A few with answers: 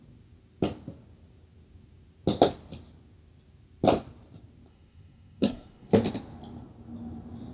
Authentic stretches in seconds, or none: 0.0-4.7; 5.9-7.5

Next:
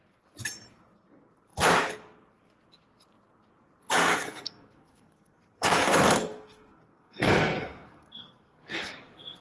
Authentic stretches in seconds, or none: 0.0-4.1